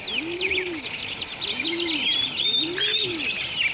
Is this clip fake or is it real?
real